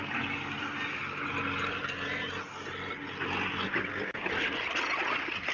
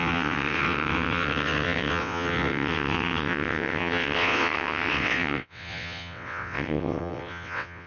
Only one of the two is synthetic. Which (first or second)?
second